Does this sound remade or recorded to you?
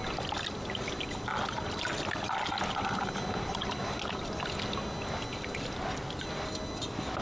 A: recorded